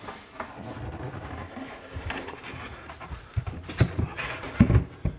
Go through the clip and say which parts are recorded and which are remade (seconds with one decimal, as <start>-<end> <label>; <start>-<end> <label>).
0.0-2.5 recorded; 2.5-3.3 remade; 3.3-4.1 recorded; 4.1-4.7 remade; 4.7-5.2 recorded